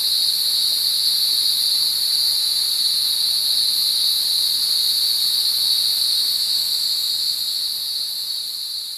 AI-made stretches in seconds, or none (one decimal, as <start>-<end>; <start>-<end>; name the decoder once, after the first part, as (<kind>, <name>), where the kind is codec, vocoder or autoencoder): none